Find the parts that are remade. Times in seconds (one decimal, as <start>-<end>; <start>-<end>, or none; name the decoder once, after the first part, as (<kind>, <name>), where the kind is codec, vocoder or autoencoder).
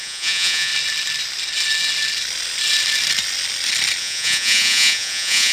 0.0-0.7 (vocoder, Vocos); 4.0-5.5